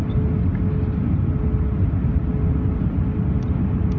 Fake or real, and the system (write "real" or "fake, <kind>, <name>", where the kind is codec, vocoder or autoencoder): real